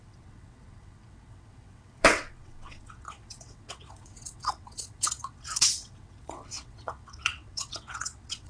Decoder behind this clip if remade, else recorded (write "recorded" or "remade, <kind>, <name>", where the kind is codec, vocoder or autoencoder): remade, vocoder, WaveNeXt